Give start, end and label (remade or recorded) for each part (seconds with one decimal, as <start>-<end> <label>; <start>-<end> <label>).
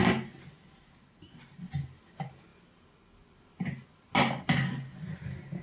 0.0-5.6 recorded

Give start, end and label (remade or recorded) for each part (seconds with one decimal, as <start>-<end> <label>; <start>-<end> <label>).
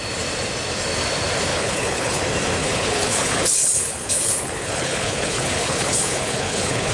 0.0-1.5 recorded; 1.5-2.2 remade; 2.2-2.6 recorded; 2.6-6.9 remade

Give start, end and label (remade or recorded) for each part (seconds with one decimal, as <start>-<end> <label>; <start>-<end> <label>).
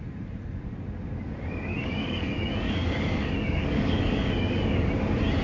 0.0-1.7 recorded; 1.7-4.9 remade; 4.9-5.4 recorded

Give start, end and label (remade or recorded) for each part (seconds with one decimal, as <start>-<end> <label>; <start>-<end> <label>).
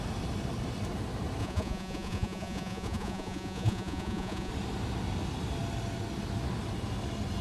0.0-1.4 recorded; 1.4-4.5 remade; 4.5-7.4 recorded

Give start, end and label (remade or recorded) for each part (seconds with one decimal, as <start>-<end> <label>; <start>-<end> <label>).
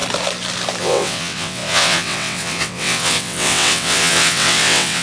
0.0-0.8 recorded; 0.8-5.0 remade